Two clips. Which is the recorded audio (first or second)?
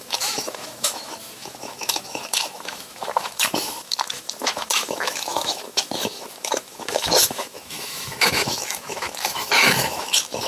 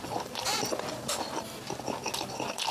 second